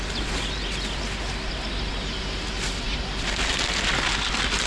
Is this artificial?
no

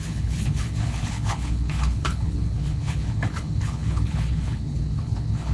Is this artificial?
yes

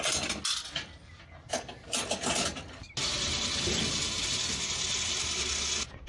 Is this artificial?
no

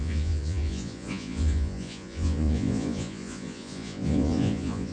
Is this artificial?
yes